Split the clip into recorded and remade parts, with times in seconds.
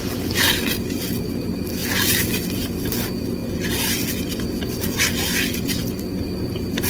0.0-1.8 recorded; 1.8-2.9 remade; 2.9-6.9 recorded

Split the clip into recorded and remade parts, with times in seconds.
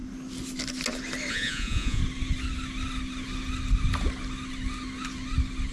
0.0-1.3 recorded; 1.3-2.0 remade; 2.0-5.7 recorded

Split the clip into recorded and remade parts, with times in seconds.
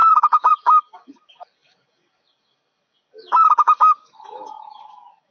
0.0-5.3 remade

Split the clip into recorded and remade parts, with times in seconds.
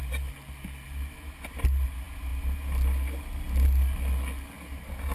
0.0-5.1 recorded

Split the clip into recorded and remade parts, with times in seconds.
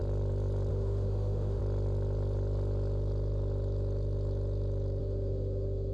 0.0-0.7 recorded; 0.7-1.6 remade; 1.6-5.0 recorded; 5.0-5.9 remade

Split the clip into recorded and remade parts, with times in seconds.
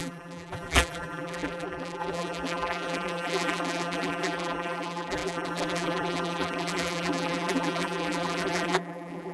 0.0-9.3 remade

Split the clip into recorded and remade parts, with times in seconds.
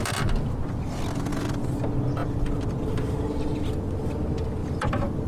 0.0-1.3 recorded; 1.3-1.8 remade; 1.8-4.6 recorded; 4.6-5.3 remade